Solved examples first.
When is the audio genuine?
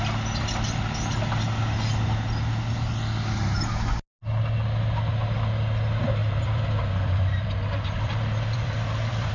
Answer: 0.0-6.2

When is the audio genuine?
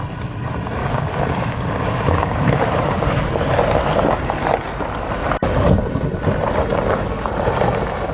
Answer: 0.0-0.8; 3.3-8.1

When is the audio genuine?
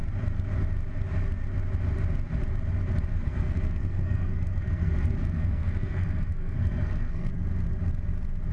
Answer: 0.0-3.1; 7.3-8.5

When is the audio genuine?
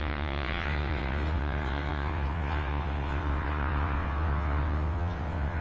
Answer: none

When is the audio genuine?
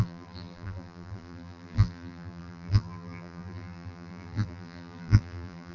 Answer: none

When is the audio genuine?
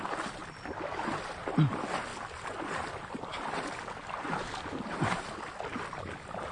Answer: 0.0-6.5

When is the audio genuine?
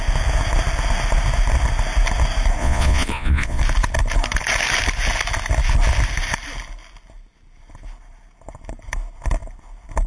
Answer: 0.0-2.6; 3.6-10.1